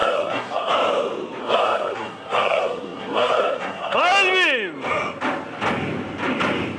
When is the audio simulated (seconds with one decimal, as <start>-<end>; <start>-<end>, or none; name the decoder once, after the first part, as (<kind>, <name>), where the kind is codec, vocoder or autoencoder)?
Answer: 0.0-0.7 (codec, SNAC); 1.4-4.0

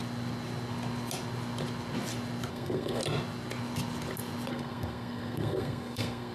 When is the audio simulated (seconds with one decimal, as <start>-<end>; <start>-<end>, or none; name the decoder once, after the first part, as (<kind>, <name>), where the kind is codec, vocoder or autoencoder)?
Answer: 2.5-3.0 (codec, SNAC); 4.5-6.3

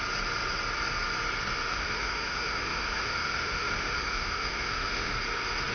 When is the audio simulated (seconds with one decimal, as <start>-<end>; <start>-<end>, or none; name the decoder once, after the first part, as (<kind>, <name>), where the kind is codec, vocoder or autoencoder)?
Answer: 1.7-5.1 (autoencoder, DAC-VAE)

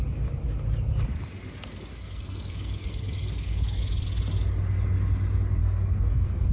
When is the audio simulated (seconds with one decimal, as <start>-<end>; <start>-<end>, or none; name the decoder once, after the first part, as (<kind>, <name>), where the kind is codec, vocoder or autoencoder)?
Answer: 1.9-3.8 (codec, SNAC); 5.6-6.5

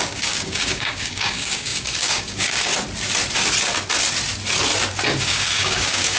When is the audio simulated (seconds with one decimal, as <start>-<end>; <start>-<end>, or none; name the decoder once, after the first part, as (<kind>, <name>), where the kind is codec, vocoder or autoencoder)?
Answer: 0.0-2.7 (codec, DAC); 5.2-6.2

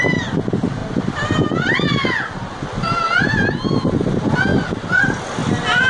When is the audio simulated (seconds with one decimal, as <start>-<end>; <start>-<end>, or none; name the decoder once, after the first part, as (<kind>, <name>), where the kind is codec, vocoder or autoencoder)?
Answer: none

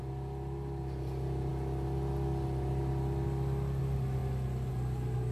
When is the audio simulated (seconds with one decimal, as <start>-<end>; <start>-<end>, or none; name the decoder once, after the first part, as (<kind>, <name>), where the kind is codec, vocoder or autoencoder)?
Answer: none